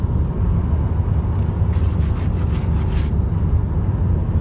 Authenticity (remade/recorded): recorded